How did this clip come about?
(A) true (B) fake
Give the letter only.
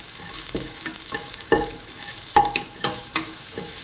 B